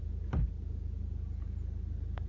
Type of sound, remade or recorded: recorded